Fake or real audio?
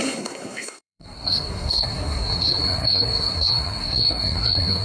fake